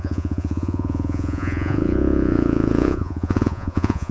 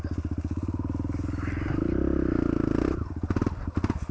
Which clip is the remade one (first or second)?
first